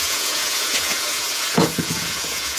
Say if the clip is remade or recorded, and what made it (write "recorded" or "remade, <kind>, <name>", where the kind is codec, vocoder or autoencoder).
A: remade, vocoder, Vocos